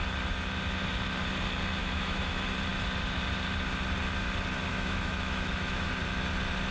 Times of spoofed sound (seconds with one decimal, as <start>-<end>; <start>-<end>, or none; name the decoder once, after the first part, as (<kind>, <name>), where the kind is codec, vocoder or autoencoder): 1.8-2.3 (autoencoder, DAC-VAE); 4.7-6.0